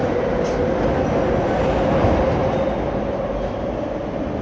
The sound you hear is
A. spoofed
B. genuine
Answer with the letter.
B